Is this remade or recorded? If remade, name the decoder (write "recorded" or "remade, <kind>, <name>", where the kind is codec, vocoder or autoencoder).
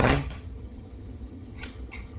remade, vocoder, HiFi-GAN